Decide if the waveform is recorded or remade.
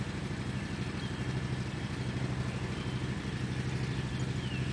recorded